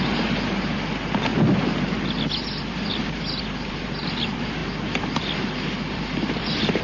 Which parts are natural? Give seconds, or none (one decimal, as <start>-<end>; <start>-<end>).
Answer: 0.0-6.8